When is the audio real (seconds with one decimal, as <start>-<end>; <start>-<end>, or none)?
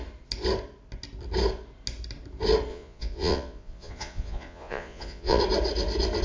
0.0-2.7; 5.4-6.2